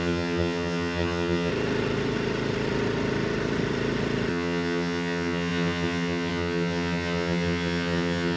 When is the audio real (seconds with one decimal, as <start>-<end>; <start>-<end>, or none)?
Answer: 1.5-4.3